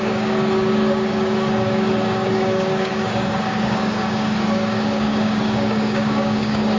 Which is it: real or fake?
fake